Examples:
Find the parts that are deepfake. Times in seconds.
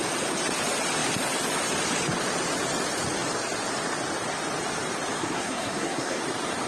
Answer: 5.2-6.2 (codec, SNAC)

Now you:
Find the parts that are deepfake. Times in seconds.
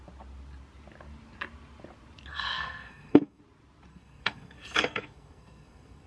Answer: 2.3-3.4 (codec, SNAC); 3.9-6.1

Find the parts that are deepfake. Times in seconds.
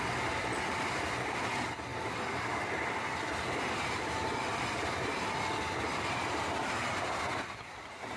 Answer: none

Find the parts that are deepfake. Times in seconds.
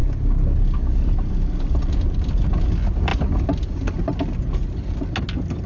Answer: none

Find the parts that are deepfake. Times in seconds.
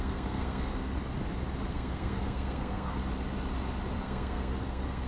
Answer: 0.0-0.7 (codec, SNAC); 1.7-3.0; 4.0-5.1